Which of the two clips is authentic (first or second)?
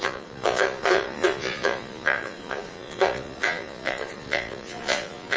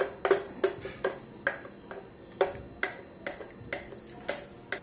second